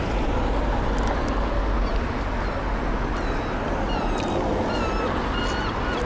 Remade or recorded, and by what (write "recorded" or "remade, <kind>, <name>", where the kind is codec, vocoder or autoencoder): recorded